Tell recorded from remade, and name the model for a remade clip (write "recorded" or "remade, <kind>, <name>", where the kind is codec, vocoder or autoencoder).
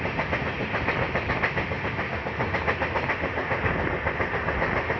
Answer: recorded